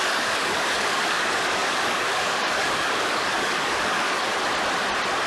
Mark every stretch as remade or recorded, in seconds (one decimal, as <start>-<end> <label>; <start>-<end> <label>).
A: 0.0-4.3 remade; 4.3-5.3 recorded